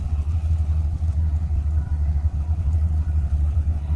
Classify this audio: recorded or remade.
remade